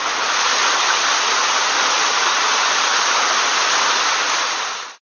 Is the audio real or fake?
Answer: real